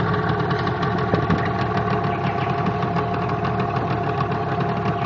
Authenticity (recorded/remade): recorded